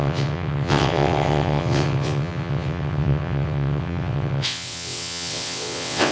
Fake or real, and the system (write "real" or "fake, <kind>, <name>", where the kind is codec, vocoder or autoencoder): fake, vocoder, WaveNeXt